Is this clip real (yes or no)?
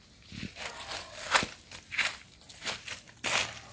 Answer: yes